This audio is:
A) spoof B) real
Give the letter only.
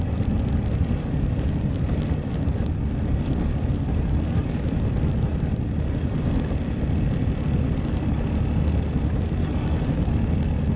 B